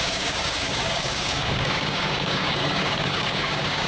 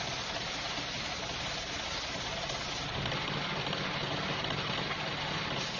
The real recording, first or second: second